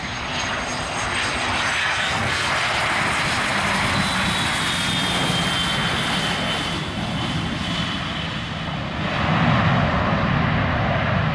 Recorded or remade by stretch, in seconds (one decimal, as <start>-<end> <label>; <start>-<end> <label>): 0.0-1.8 recorded; 1.8-2.5 remade; 2.5-11.3 recorded